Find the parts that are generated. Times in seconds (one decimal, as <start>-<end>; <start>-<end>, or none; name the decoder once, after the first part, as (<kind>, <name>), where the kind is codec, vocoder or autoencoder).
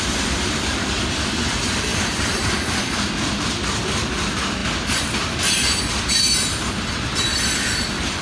1.9-3.4 (vocoder, BigVGAN v2); 4.6-6.2; 7.3-8.2